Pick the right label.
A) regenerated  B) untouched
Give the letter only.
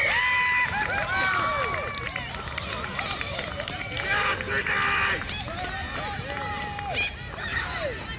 B